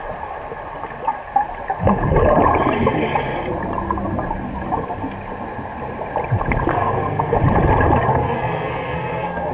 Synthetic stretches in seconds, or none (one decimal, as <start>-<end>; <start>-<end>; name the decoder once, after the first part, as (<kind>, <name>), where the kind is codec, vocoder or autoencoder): 6.7-7.4 (codec, SNAC); 8.1-9.5